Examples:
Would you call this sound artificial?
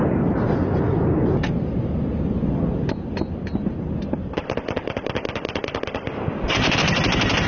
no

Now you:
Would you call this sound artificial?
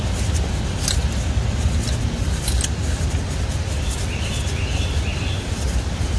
no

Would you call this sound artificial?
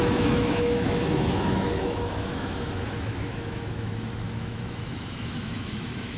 yes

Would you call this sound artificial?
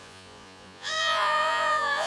yes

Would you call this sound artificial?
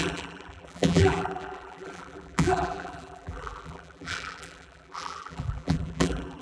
yes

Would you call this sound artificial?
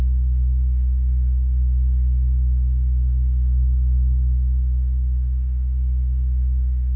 yes